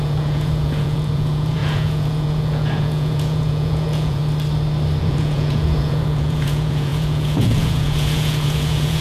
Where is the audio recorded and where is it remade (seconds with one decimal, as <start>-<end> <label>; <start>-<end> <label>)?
0.0-4.2 remade; 4.2-5.0 recorded; 5.0-9.0 remade